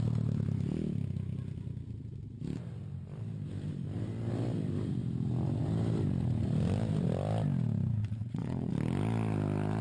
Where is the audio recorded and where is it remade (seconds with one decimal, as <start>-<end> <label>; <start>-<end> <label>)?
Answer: 0.0-8.0 recorded; 8.0-8.7 remade; 8.7-9.8 recorded